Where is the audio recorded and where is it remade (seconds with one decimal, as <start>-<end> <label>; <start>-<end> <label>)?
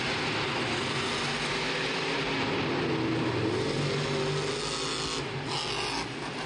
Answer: 0.0-6.5 recorded